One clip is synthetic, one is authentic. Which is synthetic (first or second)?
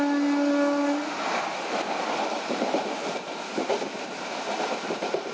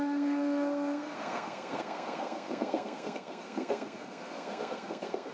second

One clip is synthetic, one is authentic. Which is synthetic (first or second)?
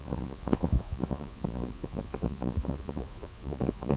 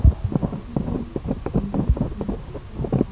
first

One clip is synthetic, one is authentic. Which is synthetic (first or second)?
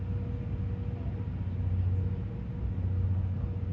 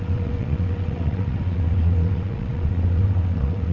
second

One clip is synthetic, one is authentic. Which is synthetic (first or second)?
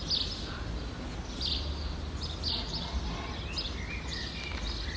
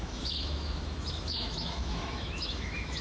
second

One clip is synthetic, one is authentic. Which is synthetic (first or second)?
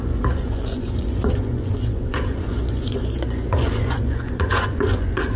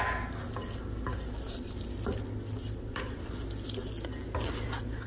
first